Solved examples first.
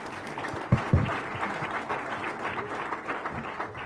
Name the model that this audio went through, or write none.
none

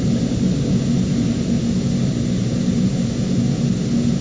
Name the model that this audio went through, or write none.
none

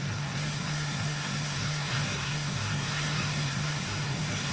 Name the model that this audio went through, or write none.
codec, SNAC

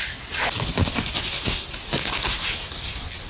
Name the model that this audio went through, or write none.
none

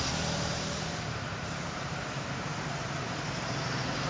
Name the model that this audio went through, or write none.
vocoder, BigVGAN v2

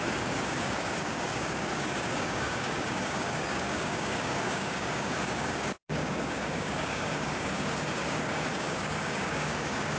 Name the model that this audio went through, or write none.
codec, DAC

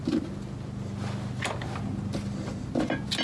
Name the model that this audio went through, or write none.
none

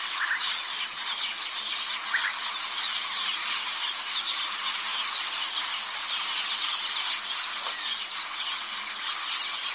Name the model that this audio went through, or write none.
none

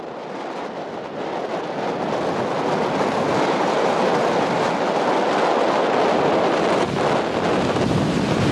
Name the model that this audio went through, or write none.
none